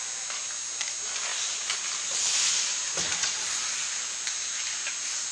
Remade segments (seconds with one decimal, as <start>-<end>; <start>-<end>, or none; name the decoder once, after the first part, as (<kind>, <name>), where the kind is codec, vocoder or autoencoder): none